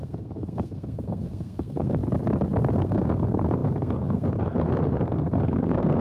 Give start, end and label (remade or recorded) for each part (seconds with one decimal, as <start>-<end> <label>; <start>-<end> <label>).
0.0-2.0 remade; 2.0-2.7 recorded; 2.7-6.0 remade